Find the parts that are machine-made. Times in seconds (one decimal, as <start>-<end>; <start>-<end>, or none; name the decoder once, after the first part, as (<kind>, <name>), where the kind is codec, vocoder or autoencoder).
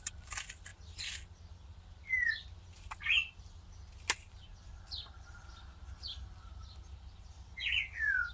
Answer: 0.0-0.7 (vocoder, BigVGAN v2); 4.7-8.3